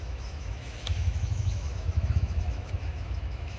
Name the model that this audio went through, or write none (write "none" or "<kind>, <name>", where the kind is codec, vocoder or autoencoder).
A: autoencoder, DAC-VAE